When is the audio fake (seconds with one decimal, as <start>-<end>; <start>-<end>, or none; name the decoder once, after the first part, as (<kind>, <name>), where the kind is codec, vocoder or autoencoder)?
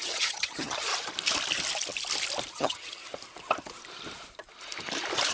0.0-0.9 (vocoder, HiFi-GAN); 2.5-3.0